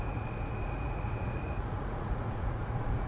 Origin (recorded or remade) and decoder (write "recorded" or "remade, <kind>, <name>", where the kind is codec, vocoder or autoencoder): remade, vocoder, Vocos